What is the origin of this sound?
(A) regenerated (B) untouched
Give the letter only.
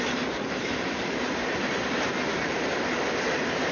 A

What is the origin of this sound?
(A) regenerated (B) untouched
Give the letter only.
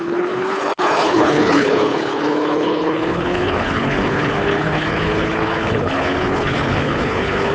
A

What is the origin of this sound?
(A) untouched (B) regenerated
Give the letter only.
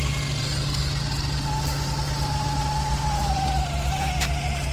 A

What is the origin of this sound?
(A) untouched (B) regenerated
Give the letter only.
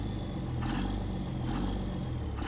A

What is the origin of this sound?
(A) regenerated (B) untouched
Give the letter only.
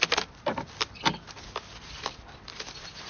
A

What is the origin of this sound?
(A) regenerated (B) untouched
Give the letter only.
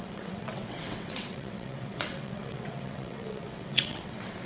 A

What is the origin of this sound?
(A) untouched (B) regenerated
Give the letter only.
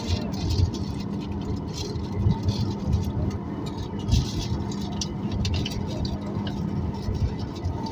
A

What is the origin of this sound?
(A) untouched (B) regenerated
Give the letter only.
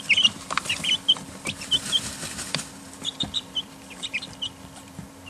B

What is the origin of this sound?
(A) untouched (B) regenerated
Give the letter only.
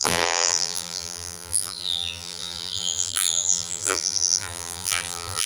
B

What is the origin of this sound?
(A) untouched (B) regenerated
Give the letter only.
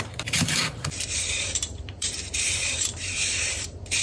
B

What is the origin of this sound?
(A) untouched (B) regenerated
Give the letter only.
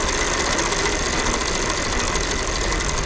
A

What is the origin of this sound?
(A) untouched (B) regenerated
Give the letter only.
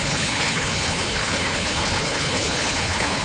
B